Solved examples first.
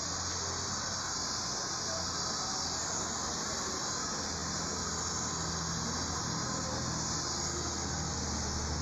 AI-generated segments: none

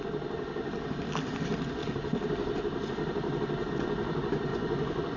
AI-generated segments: 4.5-5.2 (vocoder, Vocos)

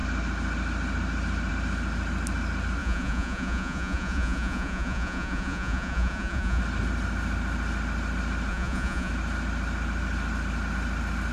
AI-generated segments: 2.8-6.6 (vocoder, Vocos); 8.5-9.1

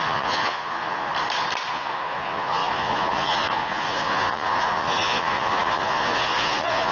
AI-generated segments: 0.0-1.1 (vocoder, Vocos); 1.7-6.9